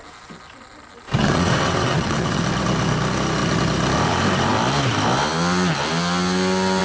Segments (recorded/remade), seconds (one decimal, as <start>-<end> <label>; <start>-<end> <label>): 0.0-1.2 recorded; 1.2-2.4 remade; 2.4-6.8 recorded